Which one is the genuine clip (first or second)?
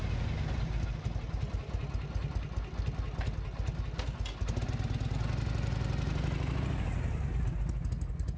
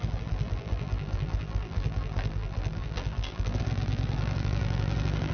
first